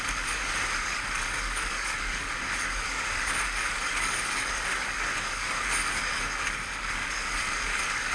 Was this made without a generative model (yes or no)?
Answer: no